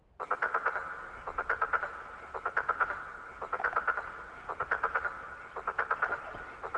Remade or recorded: recorded